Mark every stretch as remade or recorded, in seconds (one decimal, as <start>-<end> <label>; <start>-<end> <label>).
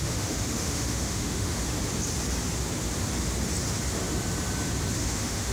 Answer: 0.0-1.6 remade; 1.6-4.9 recorded; 4.9-5.5 remade